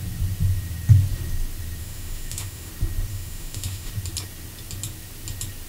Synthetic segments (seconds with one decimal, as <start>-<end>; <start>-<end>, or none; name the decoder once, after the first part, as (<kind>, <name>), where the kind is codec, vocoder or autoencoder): 1.8-2.7 (autoencoder, DAC-VAE); 3.1-3.9